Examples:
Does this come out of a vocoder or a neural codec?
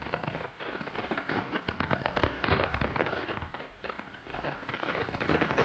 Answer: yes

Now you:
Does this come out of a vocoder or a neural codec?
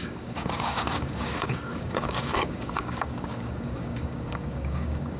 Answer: yes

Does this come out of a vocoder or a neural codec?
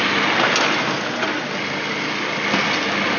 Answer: no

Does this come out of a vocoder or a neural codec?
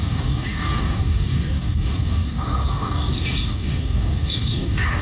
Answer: yes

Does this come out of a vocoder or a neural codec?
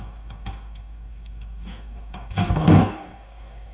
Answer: yes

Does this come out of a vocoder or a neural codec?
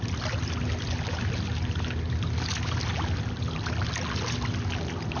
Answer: no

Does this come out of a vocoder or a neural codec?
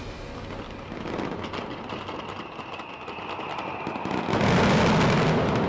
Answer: no